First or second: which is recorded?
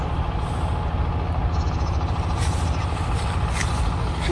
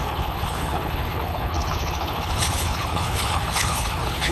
first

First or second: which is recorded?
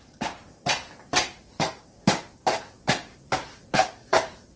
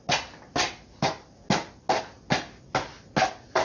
second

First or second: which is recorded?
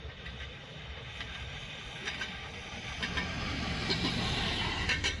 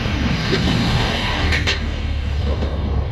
first